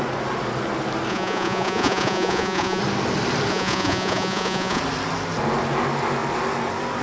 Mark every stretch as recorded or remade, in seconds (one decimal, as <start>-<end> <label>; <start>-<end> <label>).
0.0-1.1 recorded; 1.1-2.8 remade; 2.8-3.5 recorded; 3.5-4.8 remade; 4.8-7.0 recorded